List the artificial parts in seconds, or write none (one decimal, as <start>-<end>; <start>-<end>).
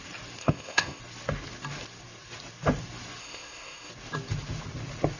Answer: 0.4-1.0; 3.2-3.9